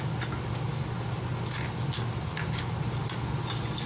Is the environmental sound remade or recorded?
recorded